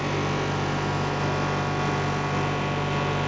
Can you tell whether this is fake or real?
real